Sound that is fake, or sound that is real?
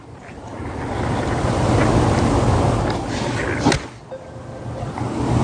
real